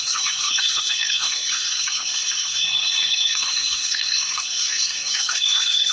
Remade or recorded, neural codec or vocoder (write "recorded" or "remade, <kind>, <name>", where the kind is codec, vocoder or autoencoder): remade, codec, SNAC